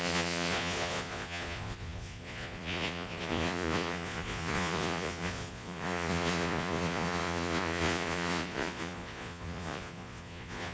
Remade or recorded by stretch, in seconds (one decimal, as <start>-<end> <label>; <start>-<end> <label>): 0.0-10.7 remade